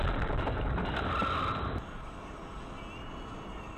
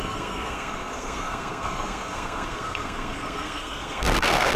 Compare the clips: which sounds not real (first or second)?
second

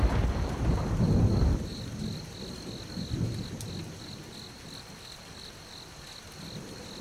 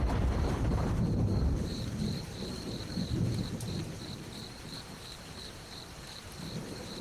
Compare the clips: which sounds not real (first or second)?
second